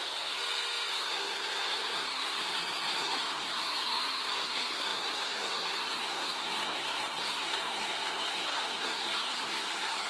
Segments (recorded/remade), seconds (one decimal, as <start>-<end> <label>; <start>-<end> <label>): 0.0-0.4 remade; 0.4-0.9 recorded; 0.9-10.1 remade